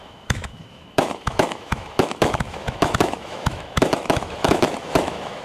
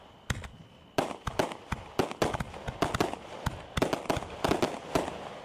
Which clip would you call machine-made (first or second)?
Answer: first